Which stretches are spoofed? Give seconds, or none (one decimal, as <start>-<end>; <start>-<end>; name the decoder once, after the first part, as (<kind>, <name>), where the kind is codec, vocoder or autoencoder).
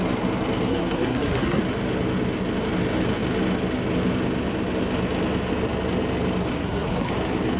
0.7-1.6 (codec, SNAC); 6.5-7.1